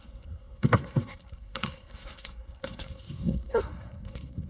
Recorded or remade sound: remade